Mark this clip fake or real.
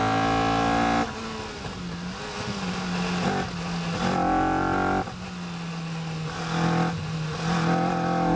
real